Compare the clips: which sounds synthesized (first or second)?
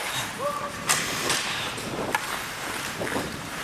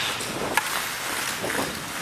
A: first